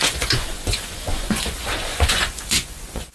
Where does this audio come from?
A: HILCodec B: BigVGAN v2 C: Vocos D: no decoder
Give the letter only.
C